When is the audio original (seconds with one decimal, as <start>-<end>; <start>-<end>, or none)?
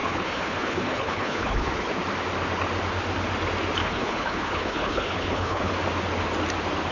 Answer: 1.9-3.8; 5.7-6.9